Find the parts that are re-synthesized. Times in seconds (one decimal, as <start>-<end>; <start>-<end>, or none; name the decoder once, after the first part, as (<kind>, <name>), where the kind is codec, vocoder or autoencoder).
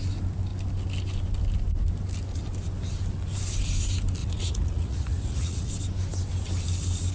4.2-5.7 (vocoder, Vocos)